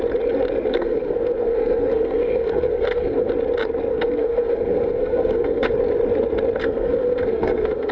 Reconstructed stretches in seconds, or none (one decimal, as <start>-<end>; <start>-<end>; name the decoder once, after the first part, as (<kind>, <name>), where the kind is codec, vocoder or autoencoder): 0.7-3.3 (codec, SNAC); 3.9-5.7; 6.6-7.9